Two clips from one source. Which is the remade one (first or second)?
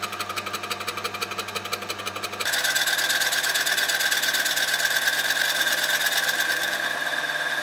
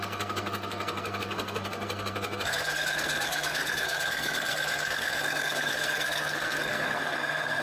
second